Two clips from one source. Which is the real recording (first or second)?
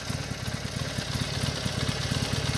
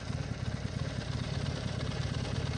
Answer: first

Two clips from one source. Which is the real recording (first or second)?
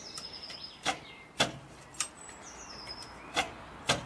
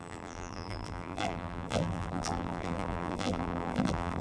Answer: first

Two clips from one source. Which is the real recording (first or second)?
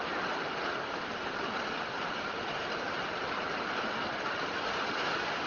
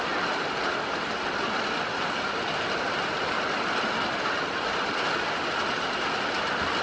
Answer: second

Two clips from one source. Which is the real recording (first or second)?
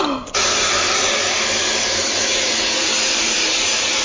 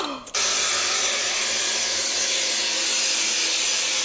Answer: second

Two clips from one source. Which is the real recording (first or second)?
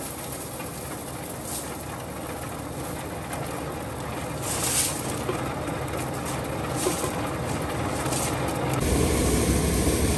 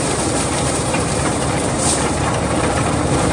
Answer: first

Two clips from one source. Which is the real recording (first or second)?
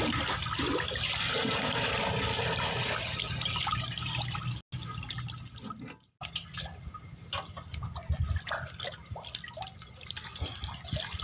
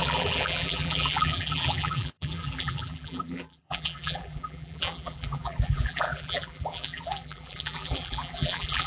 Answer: first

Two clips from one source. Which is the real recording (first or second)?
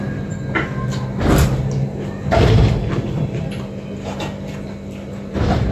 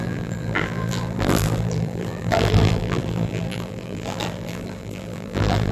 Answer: first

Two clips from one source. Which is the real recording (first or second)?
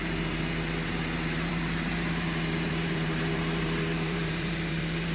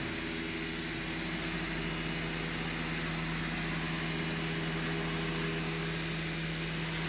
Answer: second